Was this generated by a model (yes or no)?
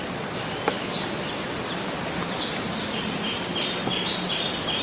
no